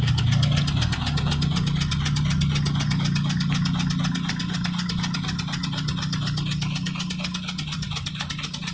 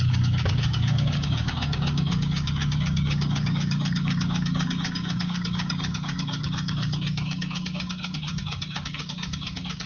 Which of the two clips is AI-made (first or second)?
second